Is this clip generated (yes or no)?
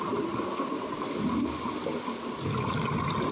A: no